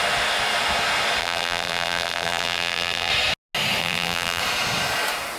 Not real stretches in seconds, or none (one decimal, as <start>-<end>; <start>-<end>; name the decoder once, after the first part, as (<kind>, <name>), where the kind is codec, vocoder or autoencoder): 1.2-3.1 (vocoder, BigVGAN v2); 3.8-4.4

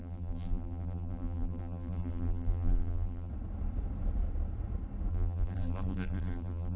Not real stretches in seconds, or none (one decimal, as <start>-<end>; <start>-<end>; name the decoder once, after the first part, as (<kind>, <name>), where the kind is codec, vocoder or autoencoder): 0.0-3.3 (vocoder, BigVGAN v2); 5.1-6.8

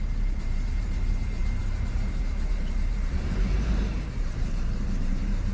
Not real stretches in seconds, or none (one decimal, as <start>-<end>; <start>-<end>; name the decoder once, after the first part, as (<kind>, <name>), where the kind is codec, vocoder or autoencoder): 0.0-5.5 (vocoder, BigVGAN v2)